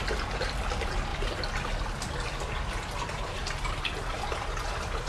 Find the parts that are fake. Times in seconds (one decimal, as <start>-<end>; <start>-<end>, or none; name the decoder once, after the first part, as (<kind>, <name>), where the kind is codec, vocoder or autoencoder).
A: none